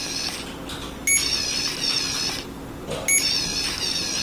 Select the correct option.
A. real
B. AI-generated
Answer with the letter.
A